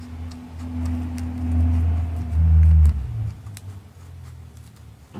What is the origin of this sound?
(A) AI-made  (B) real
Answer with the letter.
B